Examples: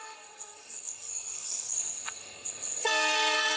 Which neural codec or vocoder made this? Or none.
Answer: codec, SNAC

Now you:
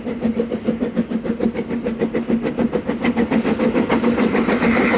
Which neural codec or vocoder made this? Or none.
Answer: none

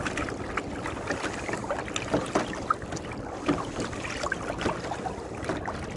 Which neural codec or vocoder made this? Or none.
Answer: none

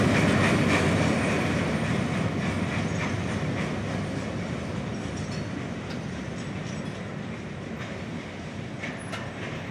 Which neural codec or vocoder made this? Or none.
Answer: none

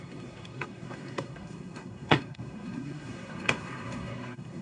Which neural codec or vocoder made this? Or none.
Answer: codec, SNAC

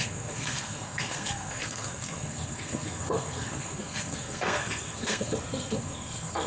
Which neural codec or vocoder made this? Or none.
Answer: codec, SNAC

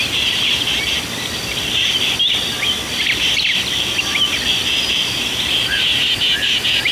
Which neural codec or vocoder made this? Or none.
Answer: none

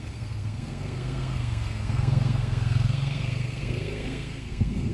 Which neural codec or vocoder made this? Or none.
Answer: codec, SNAC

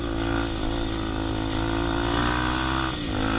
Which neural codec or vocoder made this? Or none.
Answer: none